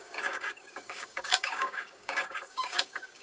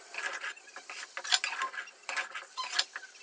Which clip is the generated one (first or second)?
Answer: first